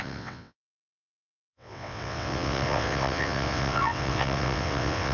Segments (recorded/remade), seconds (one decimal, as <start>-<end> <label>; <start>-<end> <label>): 0.0-5.1 remade